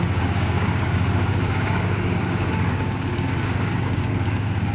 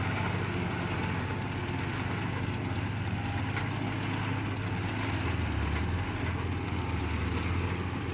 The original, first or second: second